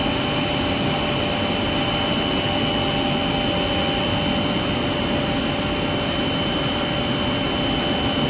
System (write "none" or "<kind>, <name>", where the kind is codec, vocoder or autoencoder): none